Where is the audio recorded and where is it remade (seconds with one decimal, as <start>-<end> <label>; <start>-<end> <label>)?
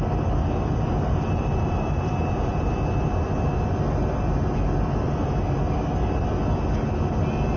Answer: 0.0-0.4 recorded; 0.4-2.7 remade; 2.7-7.6 recorded